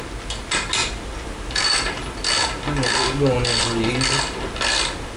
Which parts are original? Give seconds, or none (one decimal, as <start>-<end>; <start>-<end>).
0.0-5.2